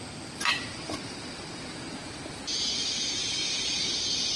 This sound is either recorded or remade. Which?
recorded